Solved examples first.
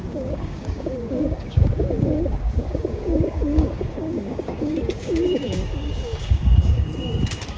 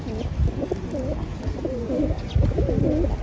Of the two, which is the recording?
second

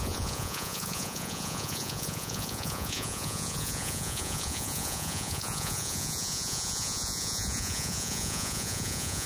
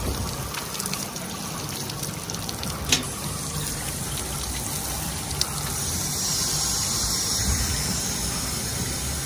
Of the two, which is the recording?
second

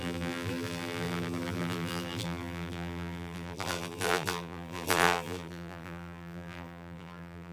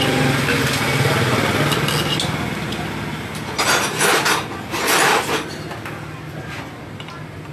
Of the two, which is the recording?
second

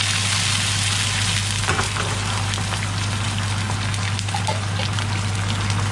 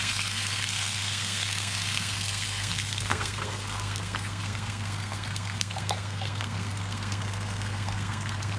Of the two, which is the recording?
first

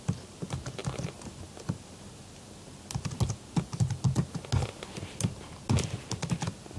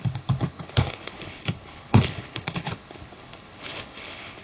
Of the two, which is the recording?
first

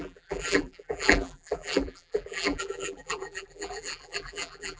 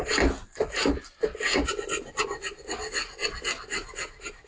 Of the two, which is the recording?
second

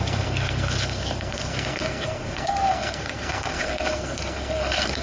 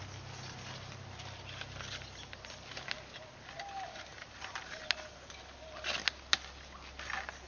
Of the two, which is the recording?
second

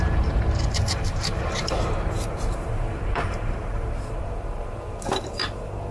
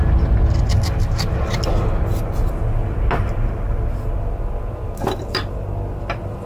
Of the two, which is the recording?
second